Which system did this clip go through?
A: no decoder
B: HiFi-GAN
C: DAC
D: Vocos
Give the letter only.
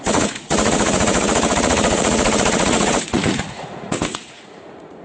D